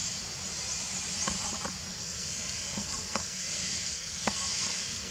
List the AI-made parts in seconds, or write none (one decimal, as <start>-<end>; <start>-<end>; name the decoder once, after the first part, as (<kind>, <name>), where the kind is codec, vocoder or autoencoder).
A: 1.9-5.1 (codec, SNAC)

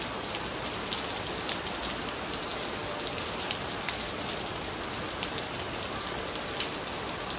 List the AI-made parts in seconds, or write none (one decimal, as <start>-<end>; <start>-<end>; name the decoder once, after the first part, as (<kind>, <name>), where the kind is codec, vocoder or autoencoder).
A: none